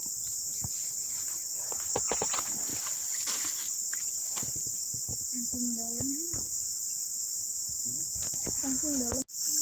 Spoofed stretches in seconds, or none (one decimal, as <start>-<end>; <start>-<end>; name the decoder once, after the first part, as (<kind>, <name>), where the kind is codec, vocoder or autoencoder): 0.0-1.9 (vocoder, BigVGAN v2); 2.7-3.8; 6.8-7.9